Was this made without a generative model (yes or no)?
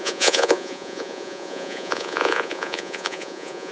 no